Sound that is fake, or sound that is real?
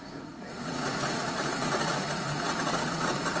fake